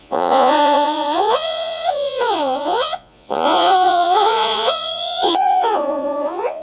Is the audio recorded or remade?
remade